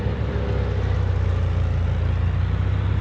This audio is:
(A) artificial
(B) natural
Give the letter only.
B